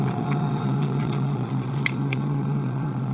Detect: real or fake fake